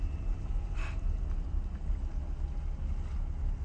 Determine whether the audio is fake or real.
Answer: real